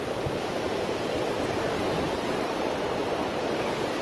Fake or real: real